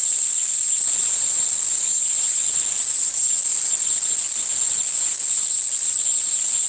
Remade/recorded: recorded